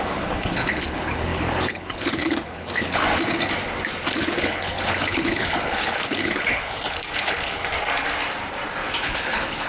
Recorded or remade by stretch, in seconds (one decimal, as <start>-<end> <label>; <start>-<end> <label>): 0.0-3.0 remade; 3.0-4.1 recorded; 4.1-7.6 remade; 7.6-9.0 recorded; 9.0-9.7 remade